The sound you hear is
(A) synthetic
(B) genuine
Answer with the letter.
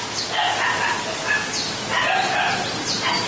B